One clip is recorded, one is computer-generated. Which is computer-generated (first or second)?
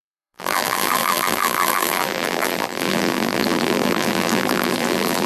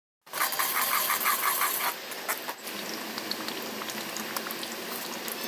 first